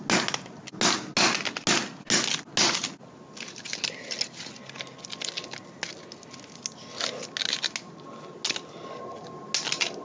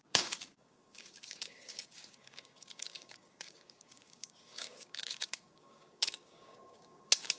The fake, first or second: second